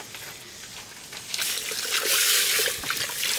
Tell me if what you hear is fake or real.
real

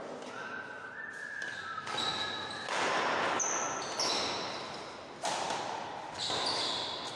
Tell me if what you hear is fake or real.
real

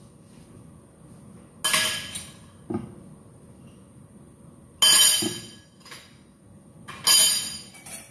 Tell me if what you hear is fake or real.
real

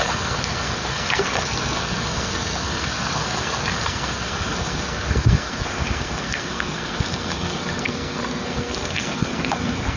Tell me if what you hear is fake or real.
fake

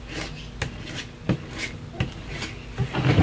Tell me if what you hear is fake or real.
real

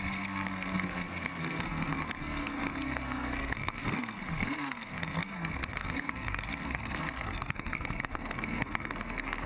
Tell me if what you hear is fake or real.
fake